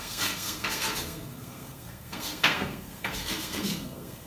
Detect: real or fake fake